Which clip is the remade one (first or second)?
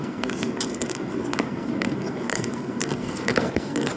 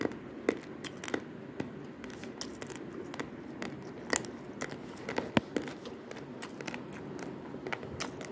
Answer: first